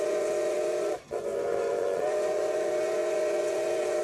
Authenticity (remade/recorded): remade